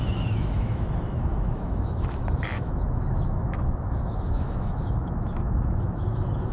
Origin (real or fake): fake